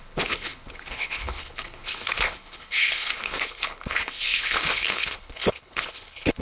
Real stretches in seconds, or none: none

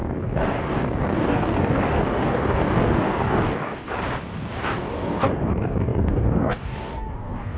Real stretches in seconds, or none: 4.0-4.6

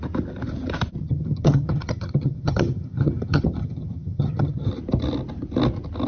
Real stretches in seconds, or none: 0.0-1.0; 4.7-6.1